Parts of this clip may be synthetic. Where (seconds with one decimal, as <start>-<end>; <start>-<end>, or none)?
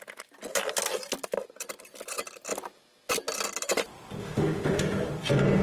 4.2-4.8